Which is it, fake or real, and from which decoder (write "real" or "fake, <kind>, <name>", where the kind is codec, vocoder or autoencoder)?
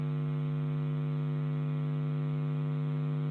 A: real